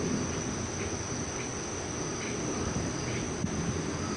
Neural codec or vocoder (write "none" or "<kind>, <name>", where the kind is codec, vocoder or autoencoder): none